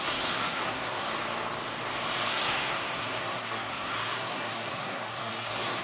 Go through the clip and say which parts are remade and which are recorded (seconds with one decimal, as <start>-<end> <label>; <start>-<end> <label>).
0.0-1.1 remade; 1.1-2.3 recorded; 2.3-5.8 remade